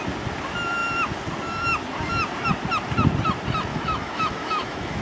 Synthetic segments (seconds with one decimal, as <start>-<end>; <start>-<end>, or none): 3.7-5.0

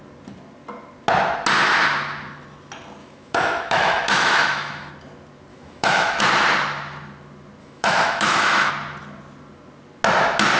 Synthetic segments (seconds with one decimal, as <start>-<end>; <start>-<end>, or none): 3.0-4.9; 5.5-6.2; 7.6-8.7

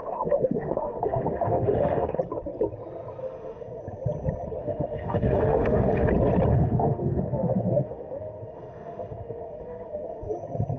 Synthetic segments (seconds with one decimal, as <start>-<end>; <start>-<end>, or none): 0.0-2.2; 3.2-3.8; 4.6-6.1; 6.5-10.3

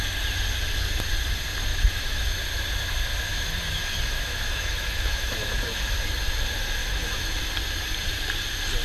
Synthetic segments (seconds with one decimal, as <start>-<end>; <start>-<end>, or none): 1.7-2.3; 3.3-5.9; 6.8-7.4